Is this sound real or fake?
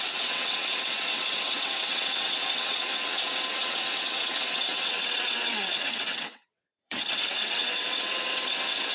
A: fake